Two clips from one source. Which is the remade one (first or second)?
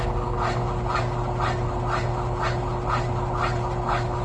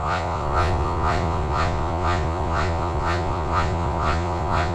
second